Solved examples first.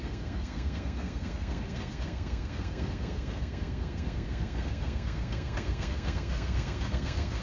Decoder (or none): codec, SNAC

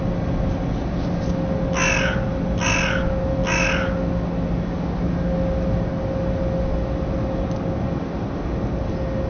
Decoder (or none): none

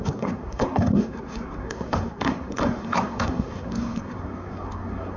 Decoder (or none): codec, SNAC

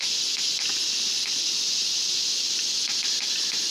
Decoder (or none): none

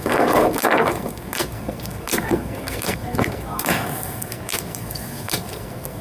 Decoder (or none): codec, SNAC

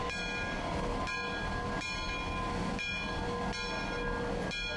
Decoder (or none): none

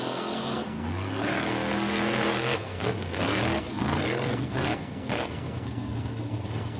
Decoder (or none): codec, SNAC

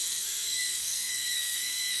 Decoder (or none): codec, SNAC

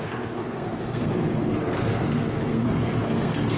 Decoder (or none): codec, SNAC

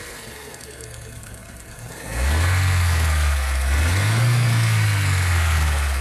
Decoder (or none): codec, SNAC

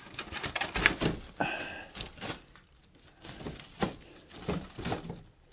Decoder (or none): none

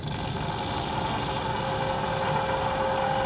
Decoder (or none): none